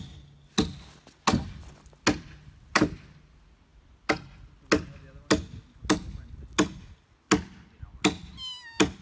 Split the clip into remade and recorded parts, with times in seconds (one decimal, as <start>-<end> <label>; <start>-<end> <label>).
0.0-9.0 recorded